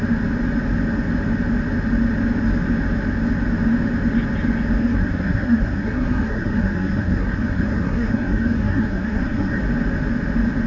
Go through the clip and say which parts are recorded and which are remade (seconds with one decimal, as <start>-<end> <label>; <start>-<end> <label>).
0.0-4.8 recorded; 4.8-9.6 remade; 9.6-10.7 recorded